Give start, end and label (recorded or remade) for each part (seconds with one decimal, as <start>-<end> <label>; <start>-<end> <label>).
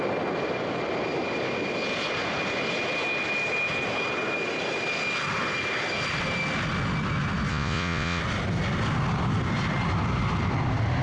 0.0-7.5 recorded; 7.5-8.2 remade; 8.2-11.0 recorded